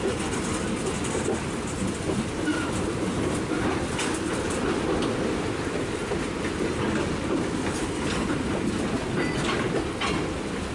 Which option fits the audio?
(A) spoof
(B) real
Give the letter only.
B